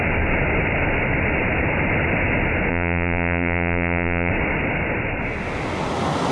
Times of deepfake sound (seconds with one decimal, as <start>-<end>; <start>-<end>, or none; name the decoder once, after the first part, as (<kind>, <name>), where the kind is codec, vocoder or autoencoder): 2.7-4.3 (vocoder, Vocos)